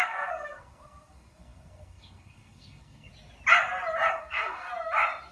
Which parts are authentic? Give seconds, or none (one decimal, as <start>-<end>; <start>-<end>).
3.1-4.1; 4.7-5.3